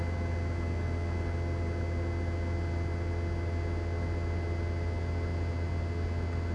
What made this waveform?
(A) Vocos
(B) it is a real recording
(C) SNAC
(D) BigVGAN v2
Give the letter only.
B